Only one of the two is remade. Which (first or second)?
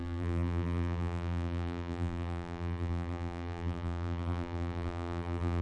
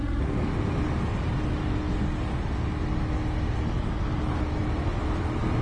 first